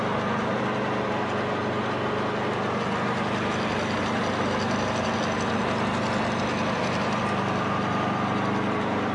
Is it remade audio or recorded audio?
recorded